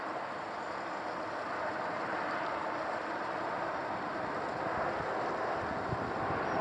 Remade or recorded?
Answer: recorded